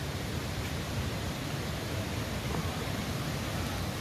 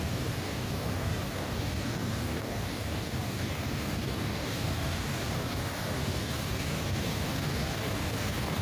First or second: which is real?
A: first